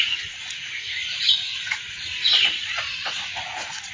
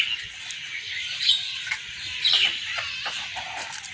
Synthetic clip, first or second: first